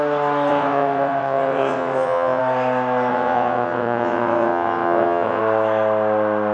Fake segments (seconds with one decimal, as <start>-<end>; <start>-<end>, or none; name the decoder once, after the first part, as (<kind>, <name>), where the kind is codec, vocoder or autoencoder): 0.5-2.4 (vocoder, WaveNeXt); 3.1-5.4